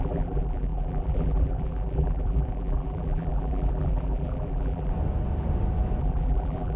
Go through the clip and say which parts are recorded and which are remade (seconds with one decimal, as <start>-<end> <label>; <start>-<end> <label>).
0.0-4.9 remade; 4.9-6.0 recorded; 6.0-6.8 remade